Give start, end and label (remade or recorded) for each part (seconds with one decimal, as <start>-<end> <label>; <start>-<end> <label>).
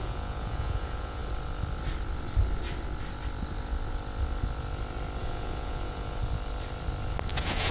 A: 0.0-1.2 remade; 1.2-5.2 recorded; 5.2-6.2 remade; 6.2-7.3 recorded; 7.3-7.7 remade